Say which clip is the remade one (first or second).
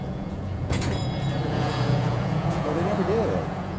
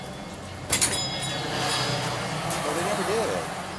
first